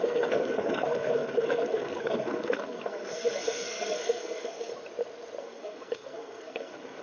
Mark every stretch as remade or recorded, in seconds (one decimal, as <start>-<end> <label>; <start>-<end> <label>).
0.0-4.7 remade; 4.7-5.4 recorded; 5.4-7.0 remade